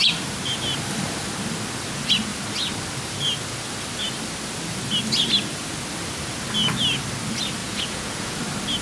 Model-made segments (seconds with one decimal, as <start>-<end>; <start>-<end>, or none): 7.6-8.4